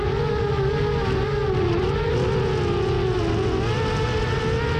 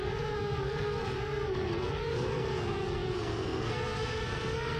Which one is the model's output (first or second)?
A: second